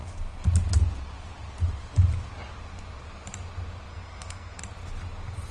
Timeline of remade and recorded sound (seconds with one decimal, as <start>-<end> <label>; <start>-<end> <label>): 0.0-3.9 recorded; 3.9-4.6 remade; 4.6-5.5 recorded